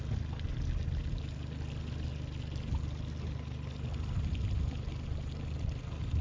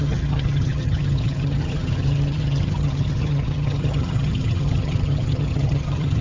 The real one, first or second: first